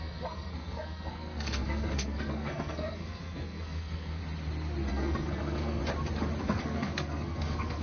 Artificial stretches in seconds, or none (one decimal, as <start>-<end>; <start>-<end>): 0.0-4.2; 4.9-5.8; 6.4-7.8